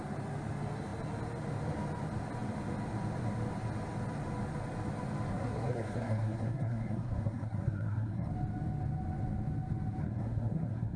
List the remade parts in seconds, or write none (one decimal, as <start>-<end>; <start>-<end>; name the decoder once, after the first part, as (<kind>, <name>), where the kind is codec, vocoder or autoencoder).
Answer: 5.3-8.3 (codec, SNAC); 10.0-11.0

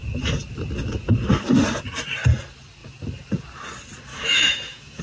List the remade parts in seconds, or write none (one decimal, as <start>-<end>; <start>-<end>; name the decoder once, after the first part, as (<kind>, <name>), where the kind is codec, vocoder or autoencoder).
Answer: 4.1-5.0 (autoencoder, DAC-VAE)

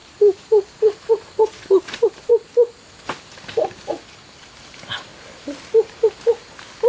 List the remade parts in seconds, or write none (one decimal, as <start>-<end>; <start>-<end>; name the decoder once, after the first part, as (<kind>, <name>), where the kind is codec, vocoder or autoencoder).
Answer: none

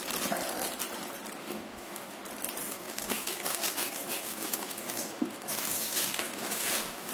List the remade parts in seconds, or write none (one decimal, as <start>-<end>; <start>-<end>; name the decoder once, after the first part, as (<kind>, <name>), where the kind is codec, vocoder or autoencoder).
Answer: 1.4-2.2 (codec, DAC); 2.6-7.1

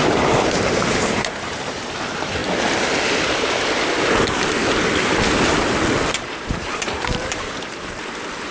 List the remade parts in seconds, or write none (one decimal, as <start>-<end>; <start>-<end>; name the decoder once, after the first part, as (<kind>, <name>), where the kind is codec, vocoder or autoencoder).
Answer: 0.0-2.4 (vocoder, BigVGAN v2); 6.1-8.5

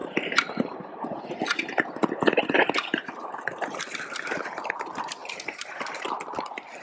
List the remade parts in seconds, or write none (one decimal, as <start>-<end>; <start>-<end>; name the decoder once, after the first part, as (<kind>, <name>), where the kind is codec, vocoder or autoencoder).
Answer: 0.0-1.2 (vocoder, BigVGAN v2); 5.2-6.8

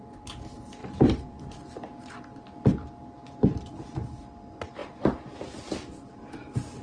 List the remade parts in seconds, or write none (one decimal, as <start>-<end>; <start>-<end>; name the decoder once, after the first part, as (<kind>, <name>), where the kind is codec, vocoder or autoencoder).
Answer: 0.8-2.1 (vocoder, BigVGAN v2); 4.8-6.1

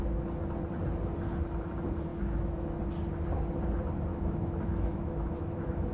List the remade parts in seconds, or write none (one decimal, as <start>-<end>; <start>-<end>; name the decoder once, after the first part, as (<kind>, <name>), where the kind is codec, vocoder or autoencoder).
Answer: 2.1-2.8 (autoencoder, DAC-VAE); 4.1-5.9